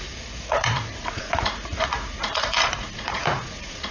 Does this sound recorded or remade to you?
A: remade